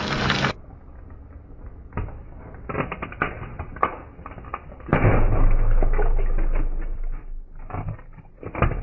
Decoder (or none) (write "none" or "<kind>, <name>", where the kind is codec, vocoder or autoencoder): none